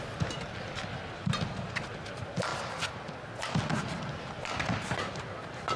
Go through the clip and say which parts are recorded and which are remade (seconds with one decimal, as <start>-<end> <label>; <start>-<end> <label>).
0.0-5.8 recorded